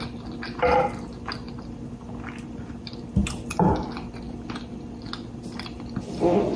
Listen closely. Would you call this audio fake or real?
real